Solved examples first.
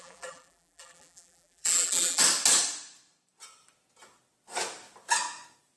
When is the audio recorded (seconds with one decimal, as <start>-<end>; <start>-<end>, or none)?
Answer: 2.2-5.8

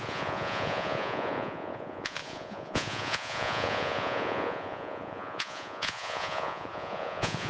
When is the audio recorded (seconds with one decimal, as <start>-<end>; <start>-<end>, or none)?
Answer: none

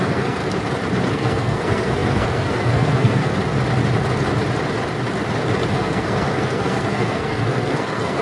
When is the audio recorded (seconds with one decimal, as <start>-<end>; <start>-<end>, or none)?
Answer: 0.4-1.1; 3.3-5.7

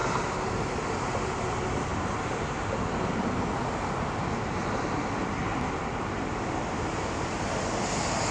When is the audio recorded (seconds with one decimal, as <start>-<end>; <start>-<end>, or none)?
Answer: 1.2-8.3

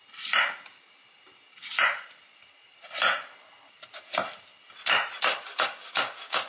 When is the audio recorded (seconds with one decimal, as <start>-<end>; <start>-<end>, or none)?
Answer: 0.0-5.3

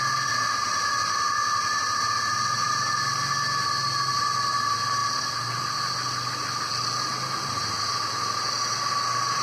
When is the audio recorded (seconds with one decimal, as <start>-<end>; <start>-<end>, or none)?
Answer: 0.0-9.4

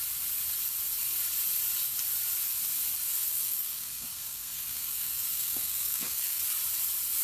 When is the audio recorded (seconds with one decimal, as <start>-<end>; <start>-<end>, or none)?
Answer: 0.0-3.3; 6.4-7.2

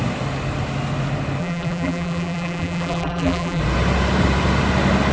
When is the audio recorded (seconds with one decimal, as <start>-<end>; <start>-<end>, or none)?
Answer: 0.0-1.4; 3.6-5.1